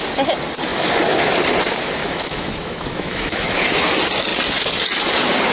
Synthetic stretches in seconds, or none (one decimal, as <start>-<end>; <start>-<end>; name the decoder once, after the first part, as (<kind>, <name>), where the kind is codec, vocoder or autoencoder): 2.0-3.8 (autoencoder, DAC-VAE)